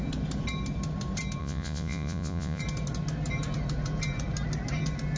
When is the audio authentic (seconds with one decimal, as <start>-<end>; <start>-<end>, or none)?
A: 0.0-1.4; 2.6-5.2